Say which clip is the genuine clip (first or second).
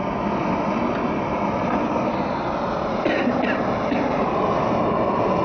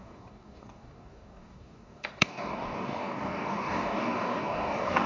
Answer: first